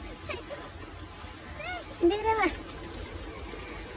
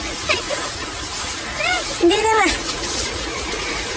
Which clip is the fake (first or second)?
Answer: second